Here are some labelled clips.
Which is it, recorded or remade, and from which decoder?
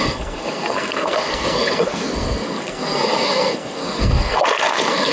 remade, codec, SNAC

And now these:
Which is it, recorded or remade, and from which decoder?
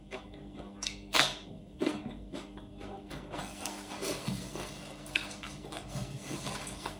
remade, codec, SNAC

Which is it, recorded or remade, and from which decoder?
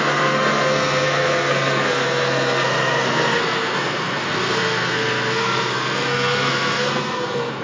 remade, codec, SNAC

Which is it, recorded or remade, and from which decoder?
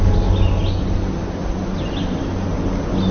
recorded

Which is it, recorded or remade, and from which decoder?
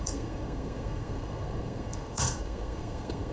remade, codec, SNAC